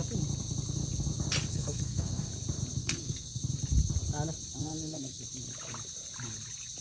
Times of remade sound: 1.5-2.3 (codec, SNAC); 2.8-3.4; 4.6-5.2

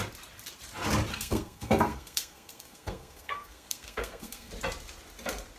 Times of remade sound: 1.1-4.5 (codec, SNAC)

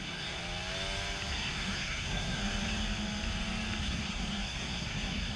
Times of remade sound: 0.0-0.4 (codec, SNAC); 1.3-2.4; 3.8-5.4

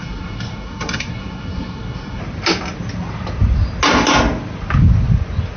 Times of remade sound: 0.0-2.2 (codec, SNAC)

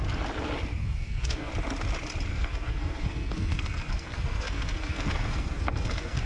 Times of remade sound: 0.8-1.5 (codec, SNAC); 2.3-6.3

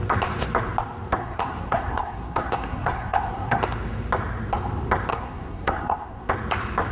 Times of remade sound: 1.2-3.6 (codec, SNAC); 5.1-6.3